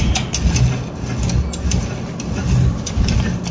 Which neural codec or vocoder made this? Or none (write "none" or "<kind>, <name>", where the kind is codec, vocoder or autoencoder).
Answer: none